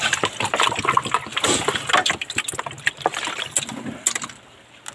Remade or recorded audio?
recorded